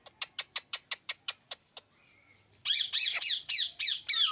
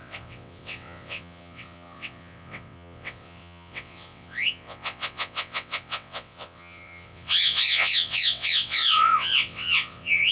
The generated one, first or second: second